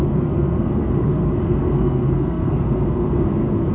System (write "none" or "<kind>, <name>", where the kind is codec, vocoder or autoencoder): codec, SNAC